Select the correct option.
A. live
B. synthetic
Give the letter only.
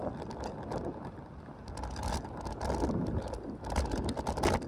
A